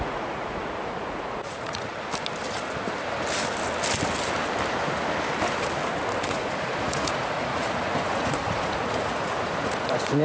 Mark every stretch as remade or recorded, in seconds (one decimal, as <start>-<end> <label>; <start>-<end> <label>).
0.0-1.9 remade; 1.9-6.2 recorded; 6.2-10.2 remade